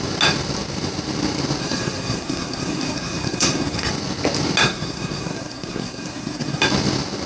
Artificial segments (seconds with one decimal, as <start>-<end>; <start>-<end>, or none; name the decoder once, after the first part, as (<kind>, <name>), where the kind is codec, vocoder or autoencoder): 1.6-3.9 (codec, SNAC); 4.6-6.6